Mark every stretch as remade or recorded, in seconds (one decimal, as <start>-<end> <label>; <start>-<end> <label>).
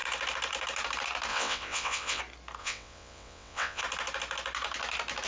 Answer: 0.0-1.3 recorded; 1.3-2.2 remade; 2.2-2.6 recorded; 2.6-3.8 remade; 3.8-5.3 recorded